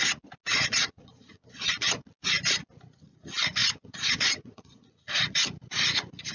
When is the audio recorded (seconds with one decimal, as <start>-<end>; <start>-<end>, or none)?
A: 0.0-0.5; 2.0-3.6; 5.1-6.3